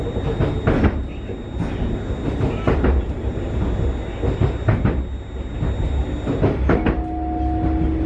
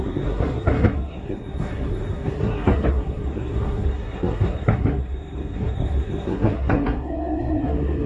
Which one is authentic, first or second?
first